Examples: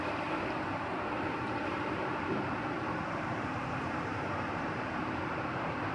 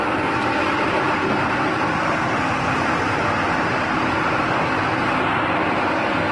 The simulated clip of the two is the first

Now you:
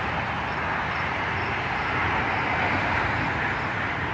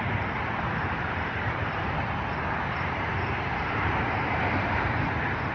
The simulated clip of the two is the second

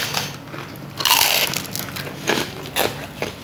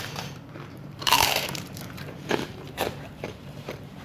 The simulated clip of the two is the second